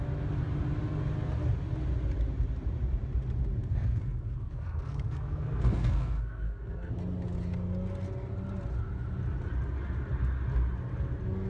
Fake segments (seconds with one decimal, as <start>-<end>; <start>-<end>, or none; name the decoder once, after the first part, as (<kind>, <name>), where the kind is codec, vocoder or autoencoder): 3.6-6.9 (codec, SNAC)